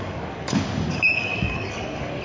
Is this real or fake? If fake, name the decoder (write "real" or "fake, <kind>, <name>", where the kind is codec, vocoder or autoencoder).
fake, codec, DAC